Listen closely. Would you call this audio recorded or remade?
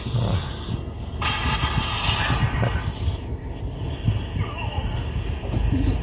recorded